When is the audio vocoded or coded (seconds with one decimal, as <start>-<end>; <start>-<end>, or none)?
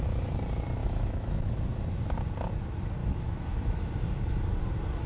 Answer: 0.8-1.8; 3.0-3.9